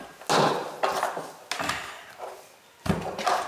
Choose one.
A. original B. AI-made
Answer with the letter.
A